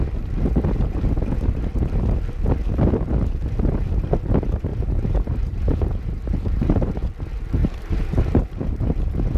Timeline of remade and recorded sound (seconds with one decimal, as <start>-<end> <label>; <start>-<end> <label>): 0.0-4.7 recorded; 4.7-6.9 remade; 6.9-7.6 recorded; 7.6-8.7 remade; 8.7-9.4 recorded